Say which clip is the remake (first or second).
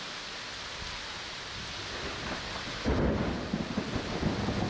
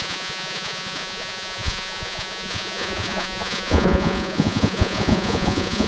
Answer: second